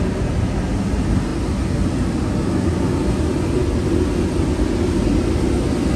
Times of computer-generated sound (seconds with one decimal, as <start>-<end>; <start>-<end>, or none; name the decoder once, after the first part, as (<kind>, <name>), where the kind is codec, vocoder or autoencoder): none